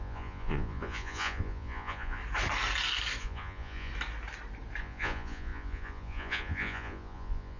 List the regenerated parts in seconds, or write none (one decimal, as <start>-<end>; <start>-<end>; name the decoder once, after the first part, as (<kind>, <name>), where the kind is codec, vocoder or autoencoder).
0.0-2.2 (vocoder, Vocos); 3.2-3.9; 4.8-7.6